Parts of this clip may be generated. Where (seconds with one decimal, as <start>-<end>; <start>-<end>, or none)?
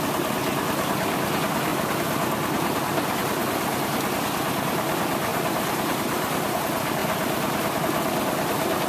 5.3-6.6